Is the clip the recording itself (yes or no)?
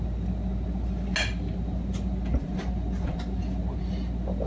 yes